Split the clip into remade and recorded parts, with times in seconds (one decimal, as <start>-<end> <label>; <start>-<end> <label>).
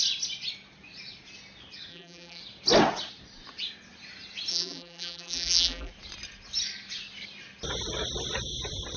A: 0.0-1.9 recorded; 1.9-2.4 remade; 2.4-4.5 recorded; 4.5-5.9 remade; 5.9-9.0 recorded